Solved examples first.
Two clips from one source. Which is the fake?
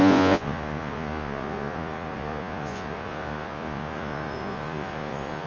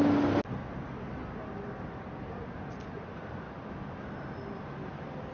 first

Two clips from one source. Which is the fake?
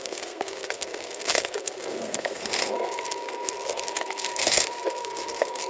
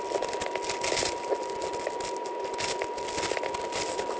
first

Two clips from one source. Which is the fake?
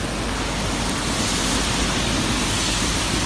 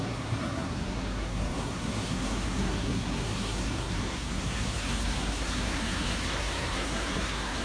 second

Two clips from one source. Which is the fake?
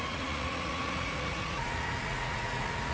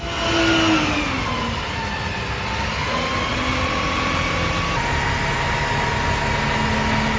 first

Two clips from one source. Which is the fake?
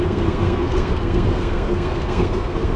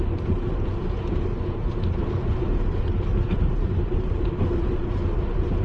first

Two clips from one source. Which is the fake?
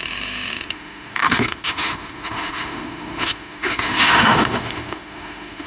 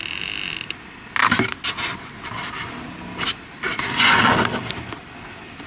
first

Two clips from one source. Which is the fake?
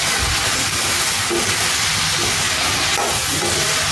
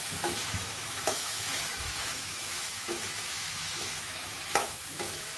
second